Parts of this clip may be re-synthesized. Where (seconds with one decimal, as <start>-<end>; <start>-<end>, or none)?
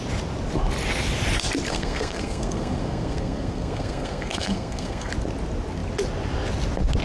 1.7-5.1